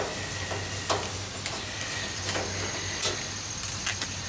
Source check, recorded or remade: recorded